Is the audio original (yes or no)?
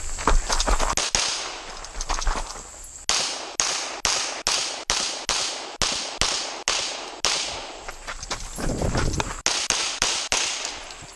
yes